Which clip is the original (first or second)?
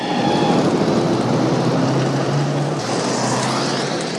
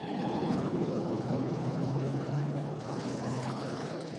first